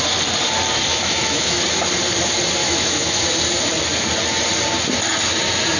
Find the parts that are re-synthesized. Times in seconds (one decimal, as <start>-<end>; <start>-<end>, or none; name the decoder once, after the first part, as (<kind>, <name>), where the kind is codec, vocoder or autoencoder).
0.9-1.6 (autoencoder, DAC-VAE); 2.6-3.2